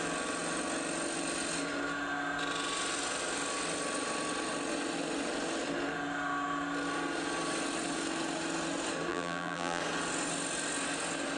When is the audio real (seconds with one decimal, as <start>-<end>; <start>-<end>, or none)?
0.0-9.1; 9.8-11.4